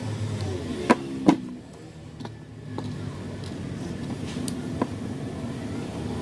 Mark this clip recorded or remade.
recorded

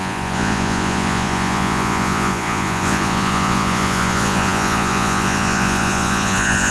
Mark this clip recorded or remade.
remade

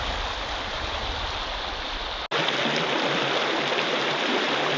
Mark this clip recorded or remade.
recorded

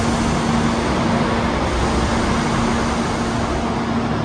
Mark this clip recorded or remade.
recorded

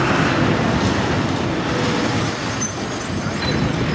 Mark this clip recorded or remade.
recorded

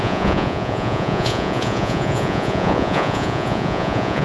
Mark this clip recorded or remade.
remade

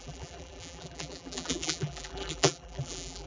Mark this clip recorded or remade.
remade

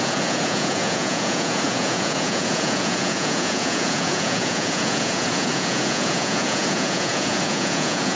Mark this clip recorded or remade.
remade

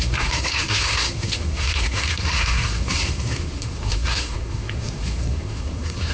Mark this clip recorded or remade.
remade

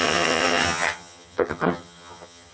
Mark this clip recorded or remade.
remade